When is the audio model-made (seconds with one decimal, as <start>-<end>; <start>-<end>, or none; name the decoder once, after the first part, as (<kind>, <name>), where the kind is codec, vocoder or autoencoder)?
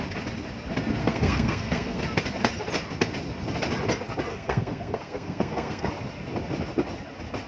1.0-2.0 (codec, SNAC); 4.3-5.9